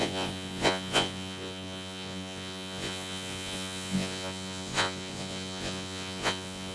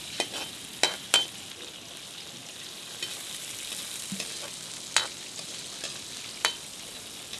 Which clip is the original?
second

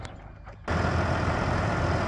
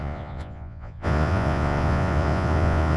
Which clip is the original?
first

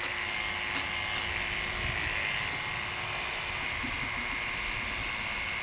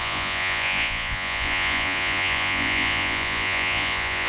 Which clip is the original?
first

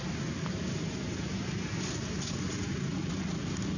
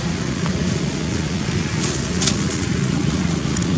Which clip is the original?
first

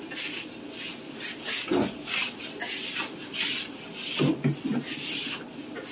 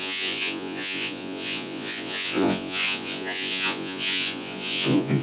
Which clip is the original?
first